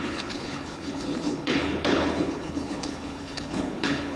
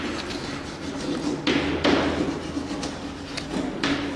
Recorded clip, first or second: second